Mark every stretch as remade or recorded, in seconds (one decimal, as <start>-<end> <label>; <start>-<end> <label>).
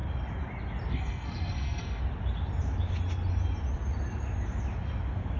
0.0-0.9 recorded; 0.9-2.0 remade; 2.0-5.4 recorded